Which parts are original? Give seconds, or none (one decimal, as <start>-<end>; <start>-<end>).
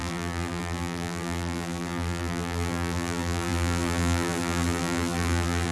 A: none